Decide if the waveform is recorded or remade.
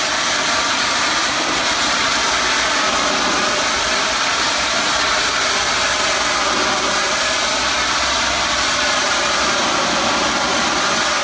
recorded